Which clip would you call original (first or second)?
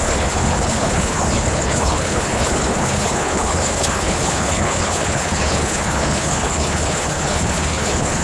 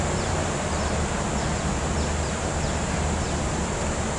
second